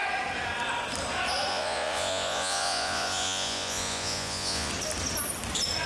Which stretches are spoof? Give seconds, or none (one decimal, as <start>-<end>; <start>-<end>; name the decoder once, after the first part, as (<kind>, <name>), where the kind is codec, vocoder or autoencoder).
1.5-4.7 (vocoder, Vocos)